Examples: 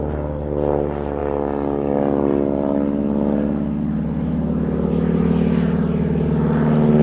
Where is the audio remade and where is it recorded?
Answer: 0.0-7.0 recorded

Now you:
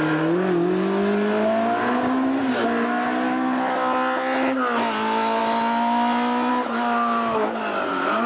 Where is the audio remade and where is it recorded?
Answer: 0.0-8.3 recorded